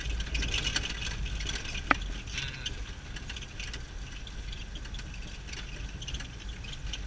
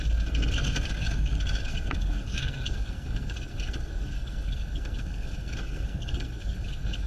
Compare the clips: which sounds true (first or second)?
first